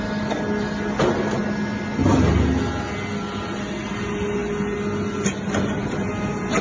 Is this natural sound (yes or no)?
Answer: yes